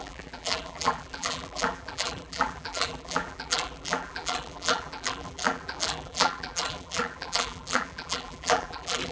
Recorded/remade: remade